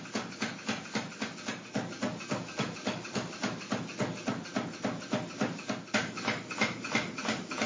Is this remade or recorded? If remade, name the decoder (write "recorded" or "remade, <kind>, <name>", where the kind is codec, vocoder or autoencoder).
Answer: recorded